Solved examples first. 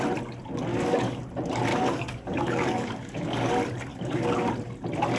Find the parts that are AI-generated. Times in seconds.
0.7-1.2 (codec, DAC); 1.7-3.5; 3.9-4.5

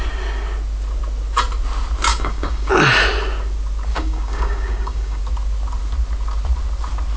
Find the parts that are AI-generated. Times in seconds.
2.1-2.7 (codec, DAC); 3.9-5.2

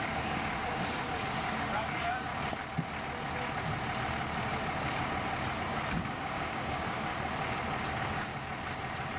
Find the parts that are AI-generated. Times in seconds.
0.0-2.3 (codec, DAC); 5.6-7.1; 7.9-8.3